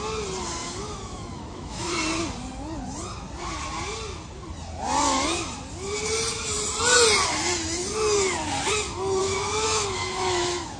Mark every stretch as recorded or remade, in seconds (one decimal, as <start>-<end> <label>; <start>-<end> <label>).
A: 0.0-0.6 recorded; 0.6-1.9 remade; 1.9-9.2 recorded; 9.2-10.8 remade